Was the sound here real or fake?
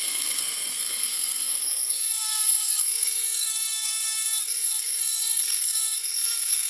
fake